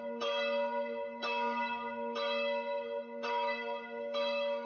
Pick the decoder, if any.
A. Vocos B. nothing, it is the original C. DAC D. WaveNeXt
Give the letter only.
C